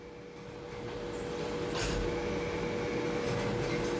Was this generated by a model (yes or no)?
no